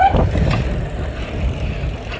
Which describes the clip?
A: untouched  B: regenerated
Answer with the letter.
A